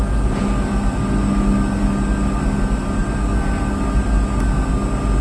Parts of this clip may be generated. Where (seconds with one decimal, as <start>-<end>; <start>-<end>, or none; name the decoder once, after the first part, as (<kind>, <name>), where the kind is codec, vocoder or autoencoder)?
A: none